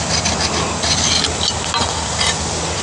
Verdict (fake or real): real